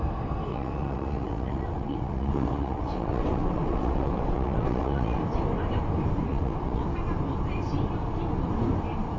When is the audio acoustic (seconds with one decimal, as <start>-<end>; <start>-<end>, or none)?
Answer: 0.0-0.5; 5.2-6.3; 6.8-9.2